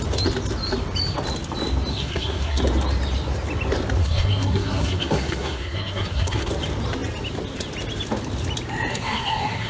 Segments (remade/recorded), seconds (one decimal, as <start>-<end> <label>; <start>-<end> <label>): 0.0-1.9 recorded; 1.9-2.6 remade; 2.6-4.0 recorded; 4.0-6.5 remade; 6.5-8.9 recorded; 8.9-9.7 remade